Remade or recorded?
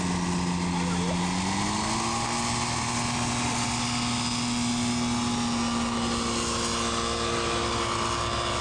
recorded